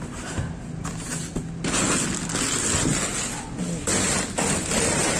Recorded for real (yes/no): yes